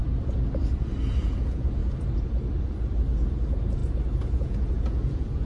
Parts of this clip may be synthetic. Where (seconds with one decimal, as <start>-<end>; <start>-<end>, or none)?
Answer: 1.2-1.8; 3.2-3.8; 4.4-5.5